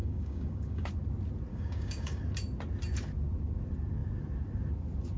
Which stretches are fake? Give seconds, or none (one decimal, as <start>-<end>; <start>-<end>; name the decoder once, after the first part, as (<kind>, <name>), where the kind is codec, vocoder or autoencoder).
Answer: 0.0-0.9 (codec, DAC); 1.5-2.2